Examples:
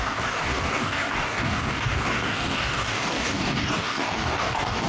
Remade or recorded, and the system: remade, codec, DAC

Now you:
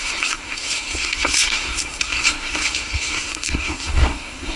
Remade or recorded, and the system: remade, codec, SNAC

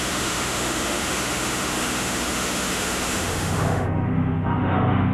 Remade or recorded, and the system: remade, autoencoder, DAC-VAE